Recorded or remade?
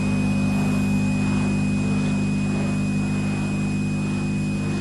recorded